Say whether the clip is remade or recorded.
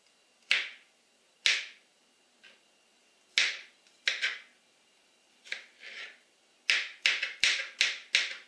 recorded